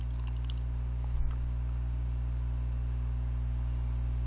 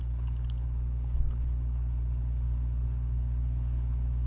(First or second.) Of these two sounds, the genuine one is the first